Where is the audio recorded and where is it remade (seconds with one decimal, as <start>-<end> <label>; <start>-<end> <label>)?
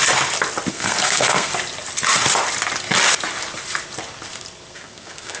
0.0-0.7 recorded; 0.7-1.5 remade; 1.5-4.7 recorded; 4.7-5.4 remade